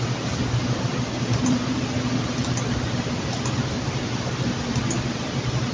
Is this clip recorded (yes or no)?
yes